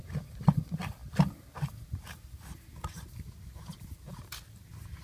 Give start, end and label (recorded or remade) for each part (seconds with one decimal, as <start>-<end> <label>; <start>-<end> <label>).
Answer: 0.0-5.0 recorded